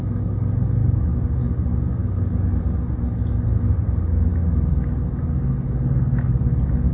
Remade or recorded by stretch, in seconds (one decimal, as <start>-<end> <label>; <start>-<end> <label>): 0.0-6.9 recorded